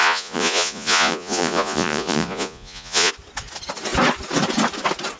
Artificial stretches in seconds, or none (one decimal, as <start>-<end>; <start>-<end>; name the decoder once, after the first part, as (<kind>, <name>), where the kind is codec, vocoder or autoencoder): 0.0-3.1 (vocoder, Vocos)